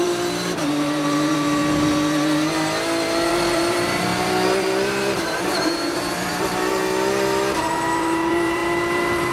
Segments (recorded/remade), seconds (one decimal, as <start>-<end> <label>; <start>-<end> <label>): 0.0-1.6 remade; 1.6-3.3 recorded; 3.3-6.8 remade; 6.8-7.7 recorded; 7.7-9.3 remade